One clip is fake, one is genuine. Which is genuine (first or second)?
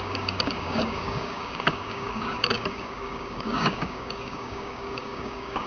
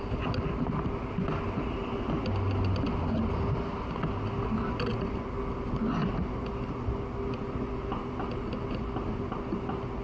second